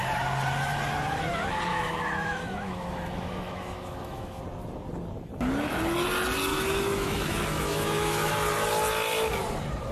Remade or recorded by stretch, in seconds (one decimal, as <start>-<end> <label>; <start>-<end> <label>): 0.0-1.7 recorded; 1.7-4.4 remade; 4.4-6.5 recorded; 6.5-8.3 remade; 8.3-9.9 recorded